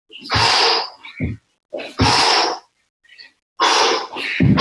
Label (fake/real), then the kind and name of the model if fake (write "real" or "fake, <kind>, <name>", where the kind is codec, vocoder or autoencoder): real